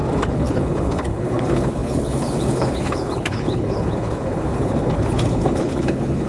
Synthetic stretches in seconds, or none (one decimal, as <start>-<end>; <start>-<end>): 0.0-6.3